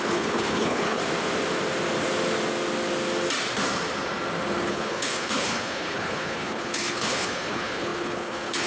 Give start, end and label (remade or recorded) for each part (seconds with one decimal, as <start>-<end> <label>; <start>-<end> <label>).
0.0-1.0 remade; 1.0-4.7 recorded; 4.7-8.7 remade